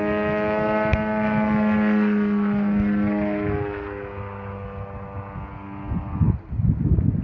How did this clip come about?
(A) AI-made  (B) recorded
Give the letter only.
B